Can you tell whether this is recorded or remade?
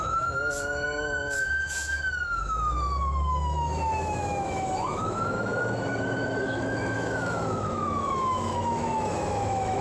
remade